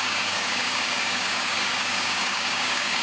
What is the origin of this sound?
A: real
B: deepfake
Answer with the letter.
B